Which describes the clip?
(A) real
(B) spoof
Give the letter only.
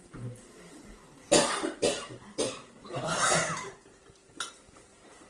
B